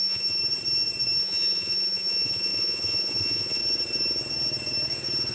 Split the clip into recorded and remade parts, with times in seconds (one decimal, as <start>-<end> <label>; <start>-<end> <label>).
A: 0.0-0.4 remade; 0.4-1.2 recorded; 1.2-3.6 remade; 3.6-5.3 recorded